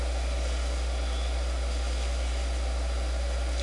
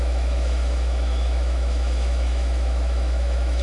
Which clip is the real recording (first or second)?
first